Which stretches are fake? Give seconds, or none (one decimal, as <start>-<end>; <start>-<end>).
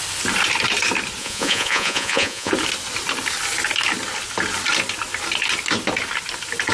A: 1.2-2.5